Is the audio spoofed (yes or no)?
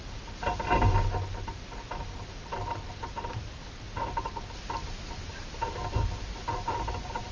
no